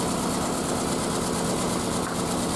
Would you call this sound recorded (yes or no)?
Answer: yes